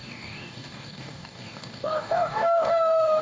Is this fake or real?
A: fake